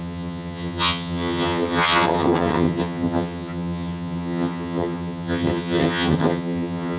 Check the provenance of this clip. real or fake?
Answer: fake